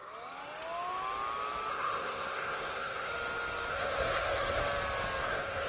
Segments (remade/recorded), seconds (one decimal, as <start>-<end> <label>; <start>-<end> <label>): 0.0-1.7 recorded; 1.7-3.1 remade; 3.1-3.7 recorded; 3.7-4.6 remade; 4.6-5.2 recorded; 5.2-5.7 remade